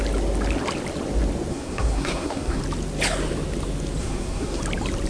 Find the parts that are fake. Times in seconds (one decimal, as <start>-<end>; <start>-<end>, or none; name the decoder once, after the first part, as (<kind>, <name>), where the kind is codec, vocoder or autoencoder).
1.5-2.6 (codec, SNAC); 4.0-4.6